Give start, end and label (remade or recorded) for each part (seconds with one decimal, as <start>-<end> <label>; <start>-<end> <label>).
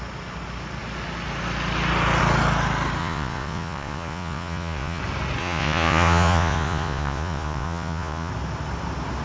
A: 0.0-3.0 recorded; 3.0-5.0 remade; 5.0-5.4 recorded; 5.4-8.3 remade; 8.3-9.2 recorded